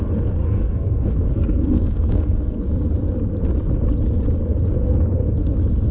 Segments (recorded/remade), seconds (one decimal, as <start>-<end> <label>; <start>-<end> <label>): 0.0-0.4 recorded; 0.4-2.6 remade; 2.6-5.9 recorded